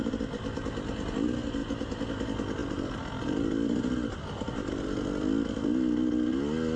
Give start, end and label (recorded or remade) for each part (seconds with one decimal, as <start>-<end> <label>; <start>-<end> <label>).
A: 0.0-6.8 recorded